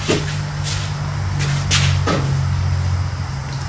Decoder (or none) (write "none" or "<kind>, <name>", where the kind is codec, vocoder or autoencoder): none